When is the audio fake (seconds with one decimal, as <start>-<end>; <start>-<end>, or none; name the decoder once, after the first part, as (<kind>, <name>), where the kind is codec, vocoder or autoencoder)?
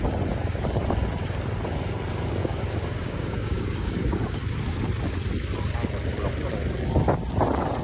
2.4-4.8 (codec, DAC)